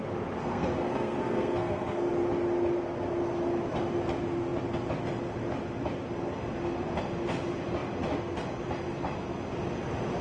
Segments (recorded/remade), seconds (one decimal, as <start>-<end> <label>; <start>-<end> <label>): 0.0-0.4 recorded; 0.4-2.1 remade; 2.1-10.2 recorded